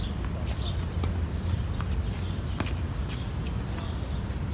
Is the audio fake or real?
real